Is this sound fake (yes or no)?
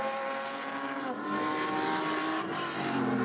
yes